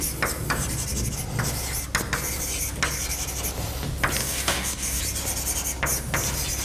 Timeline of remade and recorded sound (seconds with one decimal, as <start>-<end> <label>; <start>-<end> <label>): 0.0-4.2 recorded; 4.2-5.0 remade; 5.0-6.6 recorded